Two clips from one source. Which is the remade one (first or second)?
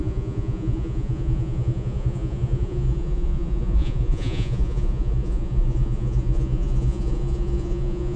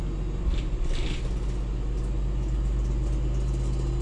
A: first